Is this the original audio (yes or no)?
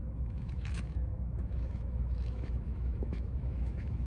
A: no